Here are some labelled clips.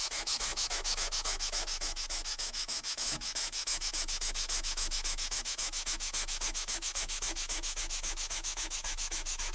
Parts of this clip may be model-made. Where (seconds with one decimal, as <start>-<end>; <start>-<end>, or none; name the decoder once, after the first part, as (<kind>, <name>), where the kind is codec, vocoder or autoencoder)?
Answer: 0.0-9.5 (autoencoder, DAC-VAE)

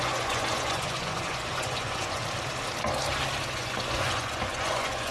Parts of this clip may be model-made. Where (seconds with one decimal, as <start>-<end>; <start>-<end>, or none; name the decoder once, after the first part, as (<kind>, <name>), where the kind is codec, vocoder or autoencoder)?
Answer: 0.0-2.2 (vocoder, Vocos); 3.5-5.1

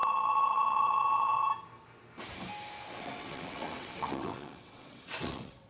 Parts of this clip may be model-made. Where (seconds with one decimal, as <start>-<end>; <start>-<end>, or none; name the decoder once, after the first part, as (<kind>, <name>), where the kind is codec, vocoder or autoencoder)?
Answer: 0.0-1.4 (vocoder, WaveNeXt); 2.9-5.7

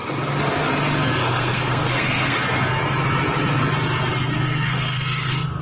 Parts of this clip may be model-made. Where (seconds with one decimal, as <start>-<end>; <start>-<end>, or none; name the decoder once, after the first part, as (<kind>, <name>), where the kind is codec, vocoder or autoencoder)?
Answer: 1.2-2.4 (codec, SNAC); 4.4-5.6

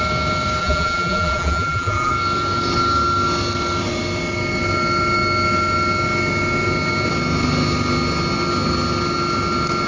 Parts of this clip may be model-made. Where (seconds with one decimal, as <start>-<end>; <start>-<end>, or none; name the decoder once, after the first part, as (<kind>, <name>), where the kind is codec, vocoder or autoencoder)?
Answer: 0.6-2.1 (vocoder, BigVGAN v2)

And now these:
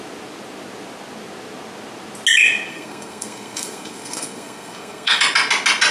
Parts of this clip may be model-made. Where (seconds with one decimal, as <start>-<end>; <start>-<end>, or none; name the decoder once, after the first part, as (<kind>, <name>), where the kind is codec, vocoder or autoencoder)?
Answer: 2.7-5.2 (codec, SNAC)